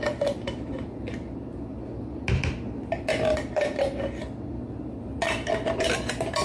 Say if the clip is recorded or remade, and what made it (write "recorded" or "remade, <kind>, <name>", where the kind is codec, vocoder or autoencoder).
recorded